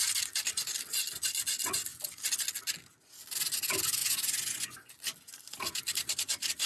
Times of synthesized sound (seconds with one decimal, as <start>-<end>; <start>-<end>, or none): 4.0-4.9